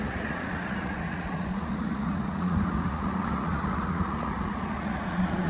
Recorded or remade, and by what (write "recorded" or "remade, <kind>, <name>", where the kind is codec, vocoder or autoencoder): remade, vocoder, Vocos